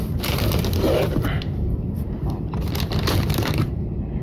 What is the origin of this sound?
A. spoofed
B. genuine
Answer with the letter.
A